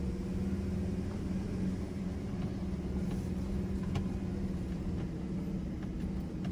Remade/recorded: recorded